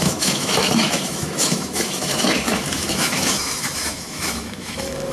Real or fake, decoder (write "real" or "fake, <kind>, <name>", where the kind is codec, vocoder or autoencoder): fake, autoencoder, DAC-VAE